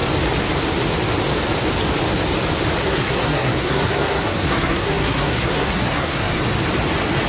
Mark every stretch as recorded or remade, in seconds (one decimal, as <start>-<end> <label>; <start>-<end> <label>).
0.0-2.8 recorded; 2.8-6.4 remade; 6.4-7.3 recorded